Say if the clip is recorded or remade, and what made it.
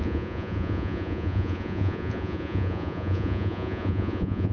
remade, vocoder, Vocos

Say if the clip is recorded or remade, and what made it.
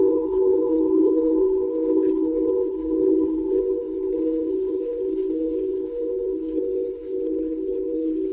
remade, codec, HILCodec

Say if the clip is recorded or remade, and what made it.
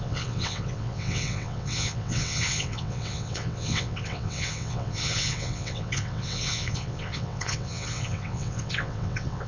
remade, vocoder, WaveNeXt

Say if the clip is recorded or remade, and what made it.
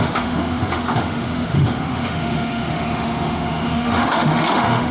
remade, autoencoder, DAC-VAE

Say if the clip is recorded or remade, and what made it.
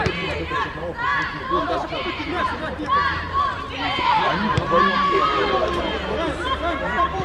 remade, vocoder, BigVGAN v2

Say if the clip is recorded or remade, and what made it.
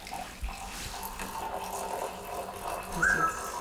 recorded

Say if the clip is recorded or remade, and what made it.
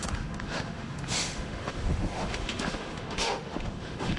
remade, autoencoder, DAC-VAE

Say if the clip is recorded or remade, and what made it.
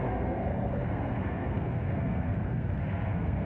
remade, codec, SNAC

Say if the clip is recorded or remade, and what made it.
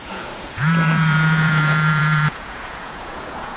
remade, vocoder, Vocos